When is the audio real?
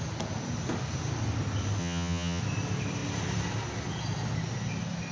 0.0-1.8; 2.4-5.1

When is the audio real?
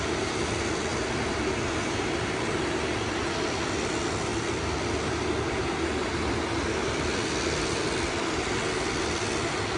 0.0-9.8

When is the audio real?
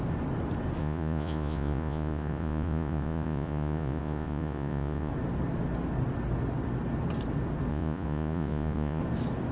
0.0-0.8; 5.1-7.7; 9.0-9.5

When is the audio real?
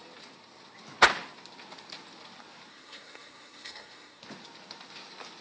0.0-2.7; 4.2-5.4